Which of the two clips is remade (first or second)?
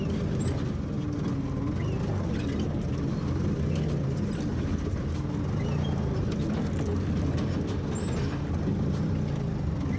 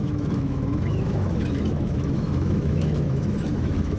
second